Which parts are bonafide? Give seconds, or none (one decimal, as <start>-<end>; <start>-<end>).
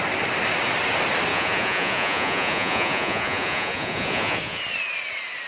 0.0-1.3; 4.6-5.5